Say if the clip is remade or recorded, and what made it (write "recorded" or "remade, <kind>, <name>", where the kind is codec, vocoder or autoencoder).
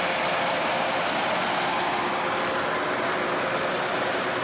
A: recorded